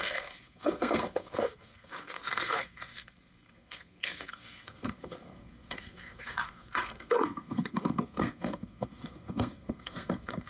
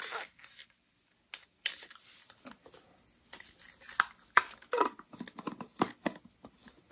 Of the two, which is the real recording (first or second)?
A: second